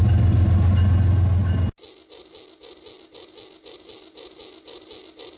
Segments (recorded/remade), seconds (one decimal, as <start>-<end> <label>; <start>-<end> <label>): 0.0-5.4 recorded